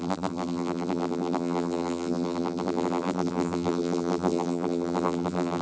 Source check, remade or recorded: remade